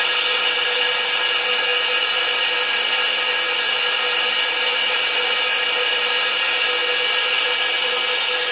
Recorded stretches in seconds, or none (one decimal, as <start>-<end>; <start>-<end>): 0.0-8.5